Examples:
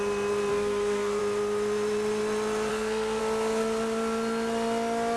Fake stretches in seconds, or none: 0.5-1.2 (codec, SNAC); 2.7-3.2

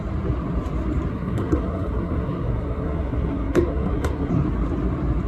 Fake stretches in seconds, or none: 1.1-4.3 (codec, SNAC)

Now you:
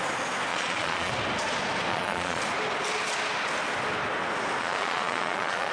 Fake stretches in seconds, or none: 0.5-1.1 (vocoder, Vocos); 1.9-2.4; 4.6-5.7

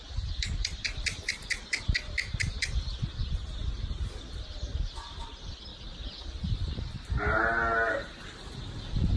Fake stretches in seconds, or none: 0.0-3.2 (vocoder, BigVGAN v2); 4.9-5.7; 7.9-9.2

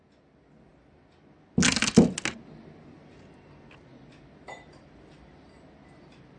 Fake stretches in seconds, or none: none

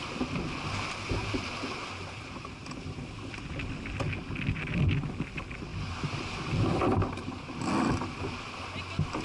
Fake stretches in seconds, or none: none

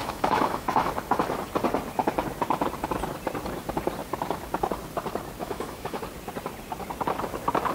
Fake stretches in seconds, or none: 0.0-0.9 (autoencoder, DAC-VAE); 5.4-6.0